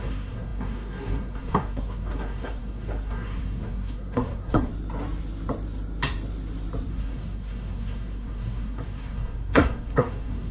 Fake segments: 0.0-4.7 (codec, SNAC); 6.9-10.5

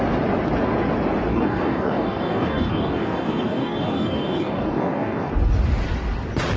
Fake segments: 1.3-5.3 (codec, DAC)

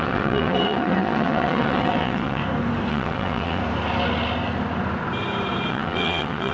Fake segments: 0.0-2.4 (vocoder, WaveNeXt); 2.9-3.6; 5.7-6.5

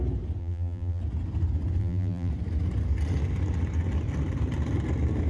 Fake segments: 0.4-1.0 (vocoder, BigVGAN v2); 1.8-2.3

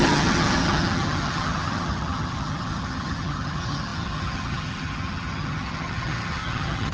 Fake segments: 0.0-6.9 (vocoder, HiFi-GAN)

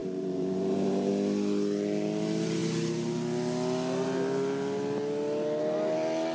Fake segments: 0.0-1.1 (vocoder, BigVGAN v2)

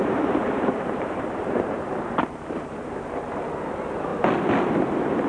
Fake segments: 0.0-2.9 (vocoder, BigVGAN v2)